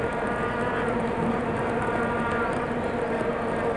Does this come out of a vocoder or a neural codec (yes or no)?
no